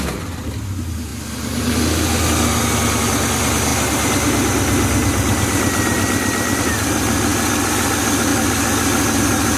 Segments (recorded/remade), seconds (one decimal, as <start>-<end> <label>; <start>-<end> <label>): 0.0-9.6 recorded